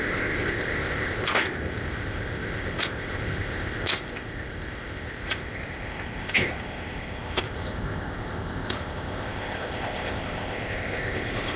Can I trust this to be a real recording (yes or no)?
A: no